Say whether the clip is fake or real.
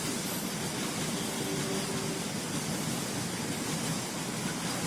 real